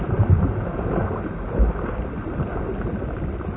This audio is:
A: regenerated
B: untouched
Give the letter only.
B